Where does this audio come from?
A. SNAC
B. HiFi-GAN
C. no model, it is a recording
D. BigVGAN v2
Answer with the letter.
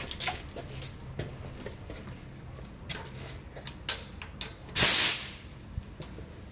C